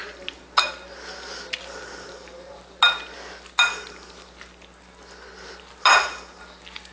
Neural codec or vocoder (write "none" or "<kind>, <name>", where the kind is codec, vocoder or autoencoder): none